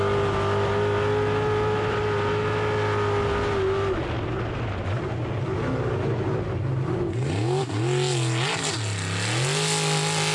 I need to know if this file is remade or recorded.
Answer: recorded